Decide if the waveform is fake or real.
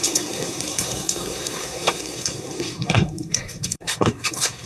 fake